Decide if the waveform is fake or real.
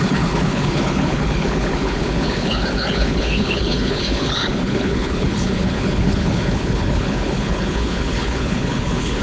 fake